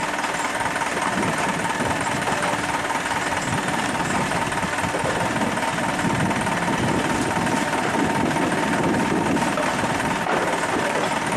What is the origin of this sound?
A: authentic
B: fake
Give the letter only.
A